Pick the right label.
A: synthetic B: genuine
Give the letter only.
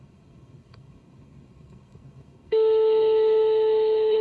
A